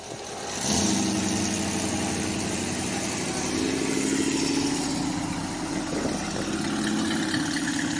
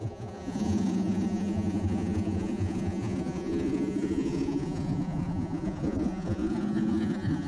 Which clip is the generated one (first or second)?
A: second